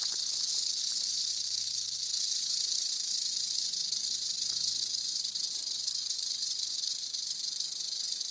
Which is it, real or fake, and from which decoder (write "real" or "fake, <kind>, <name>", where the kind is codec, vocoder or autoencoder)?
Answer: real